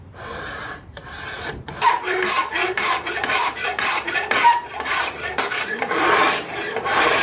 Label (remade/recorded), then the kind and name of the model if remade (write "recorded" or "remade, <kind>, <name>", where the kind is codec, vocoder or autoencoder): remade, vocoder, BigVGAN v2